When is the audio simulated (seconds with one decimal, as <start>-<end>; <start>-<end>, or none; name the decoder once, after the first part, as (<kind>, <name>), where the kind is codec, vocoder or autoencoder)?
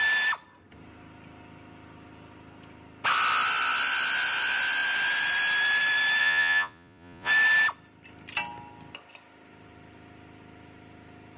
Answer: 6.2-7.3 (vocoder, Vocos)